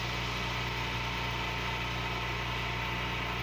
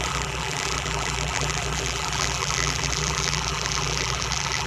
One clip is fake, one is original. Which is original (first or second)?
first